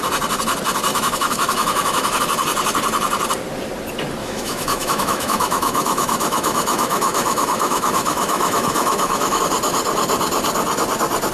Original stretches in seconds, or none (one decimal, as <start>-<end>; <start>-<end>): 0.0-0.9; 2.2-4.2; 9.4-11.3